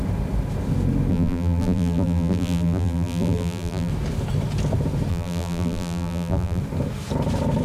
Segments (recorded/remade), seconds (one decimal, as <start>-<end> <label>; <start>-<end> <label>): 0.0-1.1 recorded; 1.1-3.9 remade; 3.9-5.1 recorded; 5.1-6.6 remade; 6.6-7.6 recorded